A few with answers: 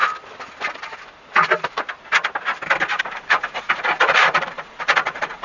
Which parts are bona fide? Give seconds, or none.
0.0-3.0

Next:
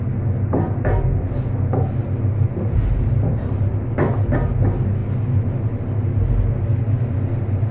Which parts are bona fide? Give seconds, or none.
0.0-7.7

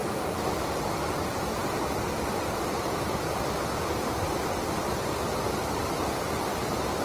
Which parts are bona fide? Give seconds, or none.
0.0-7.0

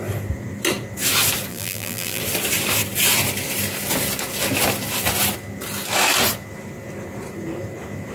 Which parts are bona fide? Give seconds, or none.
0.0-1.5; 2.2-8.1

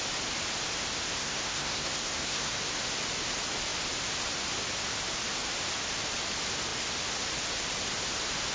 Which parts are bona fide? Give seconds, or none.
0.0-1.2; 2.5-8.5

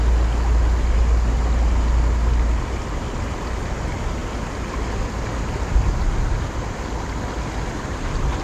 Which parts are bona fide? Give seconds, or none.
0.0-8.4